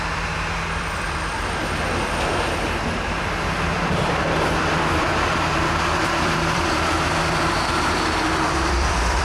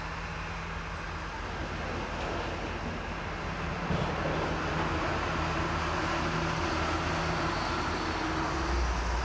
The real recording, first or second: second